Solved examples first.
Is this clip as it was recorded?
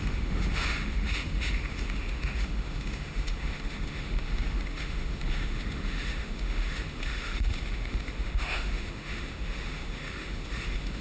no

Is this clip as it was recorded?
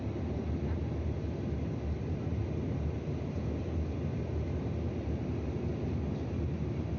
yes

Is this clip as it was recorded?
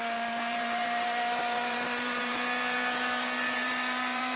no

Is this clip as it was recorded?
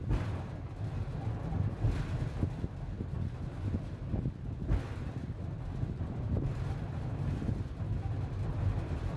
yes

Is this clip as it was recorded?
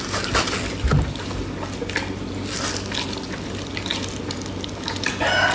yes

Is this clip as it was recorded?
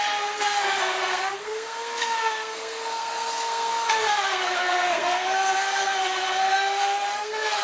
no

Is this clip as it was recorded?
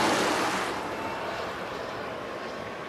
yes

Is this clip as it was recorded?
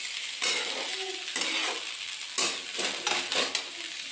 yes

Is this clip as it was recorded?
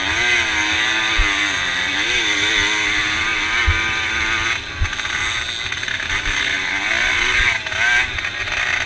yes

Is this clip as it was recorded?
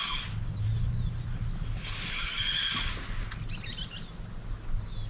yes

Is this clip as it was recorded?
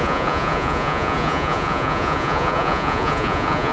no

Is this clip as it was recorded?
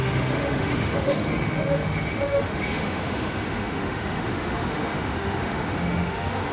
no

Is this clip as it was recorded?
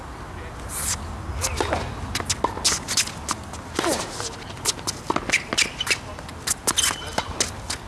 yes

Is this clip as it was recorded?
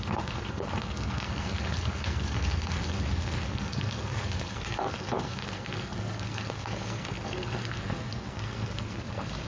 no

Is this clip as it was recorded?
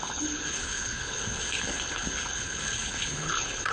no